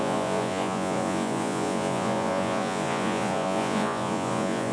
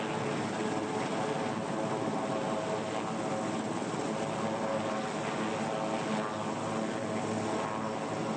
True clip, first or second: second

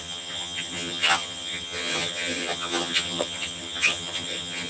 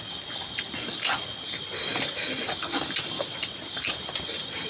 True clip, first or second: second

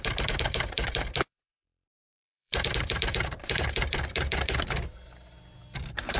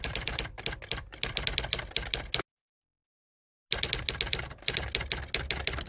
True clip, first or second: second